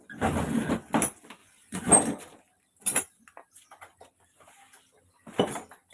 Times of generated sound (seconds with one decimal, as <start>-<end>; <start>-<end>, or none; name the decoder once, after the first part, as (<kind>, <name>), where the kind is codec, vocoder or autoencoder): 1.4-1.9 (vocoder, Vocos)